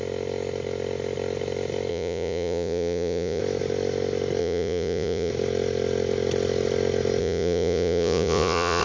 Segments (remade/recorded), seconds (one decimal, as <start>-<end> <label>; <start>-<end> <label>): 0.0-1.9 recorded; 1.9-3.4 remade; 3.4-4.4 recorded; 4.4-5.3 remade; 5.3-7.2 recorded; 7.2-8.8 remade